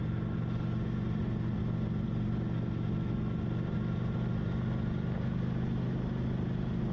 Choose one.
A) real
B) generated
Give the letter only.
A